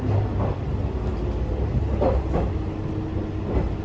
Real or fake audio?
real